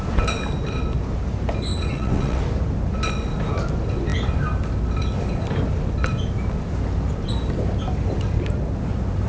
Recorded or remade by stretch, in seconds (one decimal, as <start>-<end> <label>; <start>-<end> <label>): 0.0-1.7 recorded; 1.7-2.4 remade; 2.4-9.3 recorded